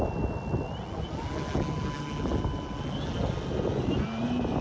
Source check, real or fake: real